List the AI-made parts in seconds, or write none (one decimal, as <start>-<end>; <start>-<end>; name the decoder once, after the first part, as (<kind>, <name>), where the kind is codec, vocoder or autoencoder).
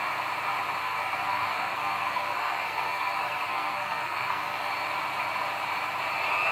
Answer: 0.8-4.7 (codec, SNAC)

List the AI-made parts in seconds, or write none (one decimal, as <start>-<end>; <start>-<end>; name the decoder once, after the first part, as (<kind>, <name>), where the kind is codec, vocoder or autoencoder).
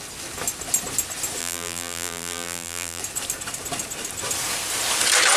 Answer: 1.4-3.0 (vocoder, BigVGAN v2)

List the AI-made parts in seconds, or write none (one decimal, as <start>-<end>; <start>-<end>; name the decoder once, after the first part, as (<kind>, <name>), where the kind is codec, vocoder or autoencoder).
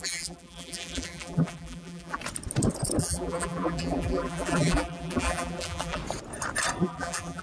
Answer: 0.0-2.2 (vocoder, BigVGAN v2); 3.0-6.0; 6.8-7.4